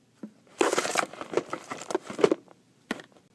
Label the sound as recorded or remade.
remade